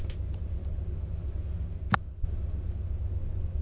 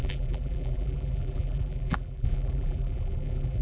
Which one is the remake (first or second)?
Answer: second